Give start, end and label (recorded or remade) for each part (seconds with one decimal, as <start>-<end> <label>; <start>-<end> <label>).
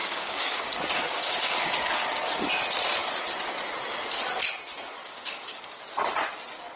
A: 0.0-2.5 remade; 2.5-5.0 recorded; 5.0-5.9 remade; 5.9-6.8 recorded